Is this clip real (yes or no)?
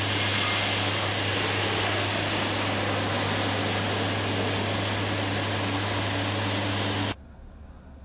yes